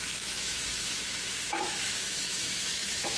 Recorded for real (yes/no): no